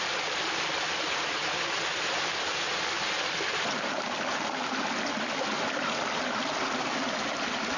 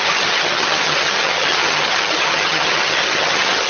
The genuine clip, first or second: first